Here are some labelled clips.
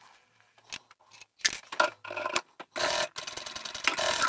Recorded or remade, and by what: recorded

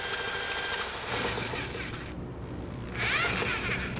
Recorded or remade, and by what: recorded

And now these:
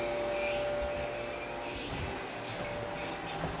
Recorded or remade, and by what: recorded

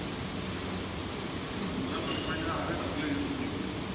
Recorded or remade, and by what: recorded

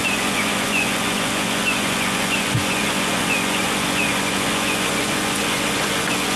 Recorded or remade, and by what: remade, vocoder, Vocos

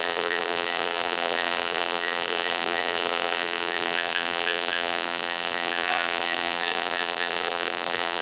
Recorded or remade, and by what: remade, vocoder, BigVGAN v2